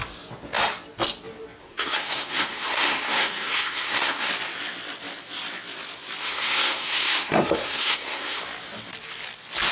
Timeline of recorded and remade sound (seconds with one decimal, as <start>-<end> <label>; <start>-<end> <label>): 0.0-1.6 recorded; 1.6-4.3 remade; 4.3-6.2 recorded; 6.2-8.4 remade; 8.4-9.7 recorded